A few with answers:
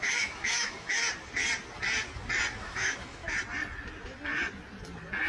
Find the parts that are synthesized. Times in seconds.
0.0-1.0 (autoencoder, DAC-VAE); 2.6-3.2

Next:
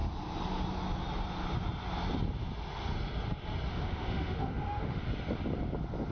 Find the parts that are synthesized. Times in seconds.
3.7-5.0 (autoencoder, DAC-VAE)